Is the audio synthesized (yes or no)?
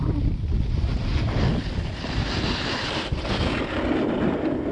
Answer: no